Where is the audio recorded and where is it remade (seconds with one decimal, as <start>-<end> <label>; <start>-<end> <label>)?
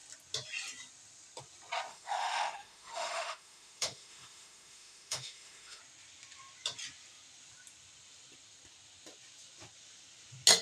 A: 0.0-1.9 recorded; 1.9-5.8 remade; 5.8-10.6 recorded